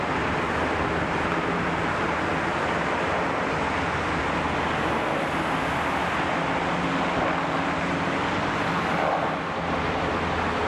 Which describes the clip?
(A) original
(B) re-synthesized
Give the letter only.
A